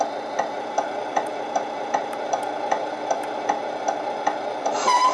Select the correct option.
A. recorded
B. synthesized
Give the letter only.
A